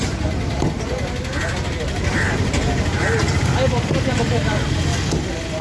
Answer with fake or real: real